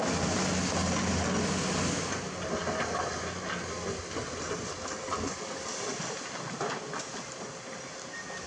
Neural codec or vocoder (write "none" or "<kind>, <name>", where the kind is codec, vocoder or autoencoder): none